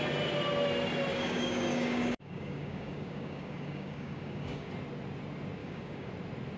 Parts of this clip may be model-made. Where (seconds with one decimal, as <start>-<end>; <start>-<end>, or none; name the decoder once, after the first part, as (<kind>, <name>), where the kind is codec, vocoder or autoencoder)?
1.1-4.7 (codec, DAC); 5.6-6.1